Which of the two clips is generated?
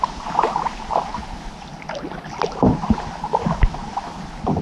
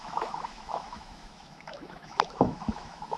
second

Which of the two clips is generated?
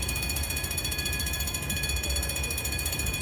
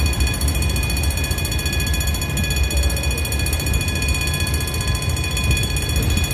first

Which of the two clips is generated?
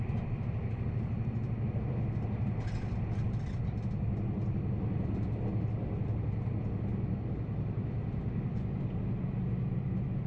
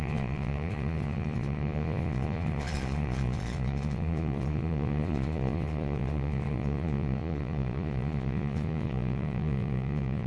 second